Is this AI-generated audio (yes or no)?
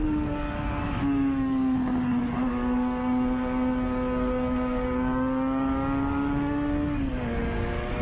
yes